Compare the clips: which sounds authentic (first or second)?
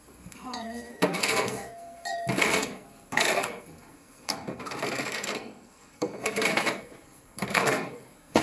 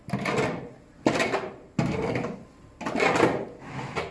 second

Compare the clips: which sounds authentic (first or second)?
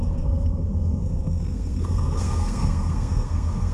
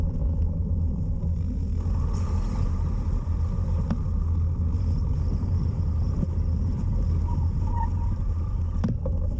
second